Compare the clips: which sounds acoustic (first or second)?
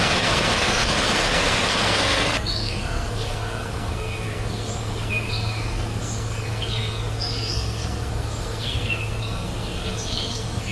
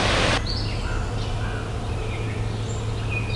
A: second